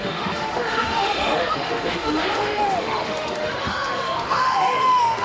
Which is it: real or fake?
fake